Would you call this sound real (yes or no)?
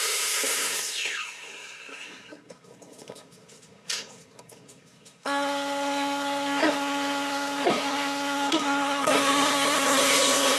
no